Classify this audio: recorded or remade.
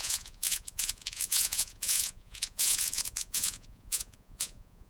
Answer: remade